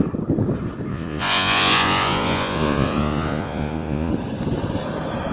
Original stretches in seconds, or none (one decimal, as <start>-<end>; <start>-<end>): 0.0-0.9; 4.1-5.3